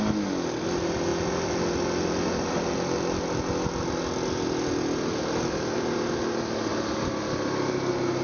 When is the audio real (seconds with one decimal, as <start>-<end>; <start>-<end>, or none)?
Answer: 0.0-8.2